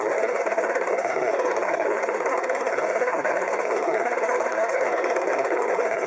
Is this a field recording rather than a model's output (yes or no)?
no